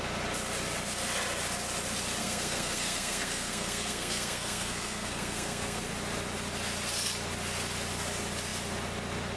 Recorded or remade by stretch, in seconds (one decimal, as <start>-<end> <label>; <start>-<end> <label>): 0.0-2.2 recorded; 2.2-5.9 remade; 5.9-9.4 recorded